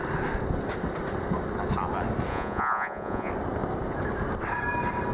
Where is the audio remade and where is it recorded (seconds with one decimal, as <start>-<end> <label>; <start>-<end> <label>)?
0.0-2.3 recorded; 2.3-3.3 remade; 3.3-5.1 recorded